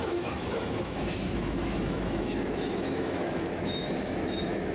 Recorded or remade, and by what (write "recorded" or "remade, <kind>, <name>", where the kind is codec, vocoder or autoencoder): remade, autoencoder, DAC-VAE